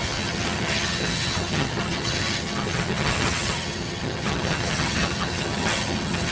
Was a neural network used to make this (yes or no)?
yes